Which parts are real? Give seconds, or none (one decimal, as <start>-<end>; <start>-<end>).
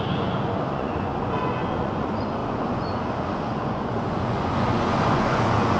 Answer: none